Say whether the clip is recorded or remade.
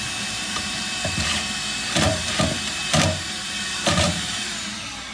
remade